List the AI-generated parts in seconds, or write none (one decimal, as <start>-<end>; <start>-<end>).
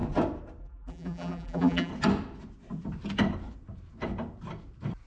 0.6-1.9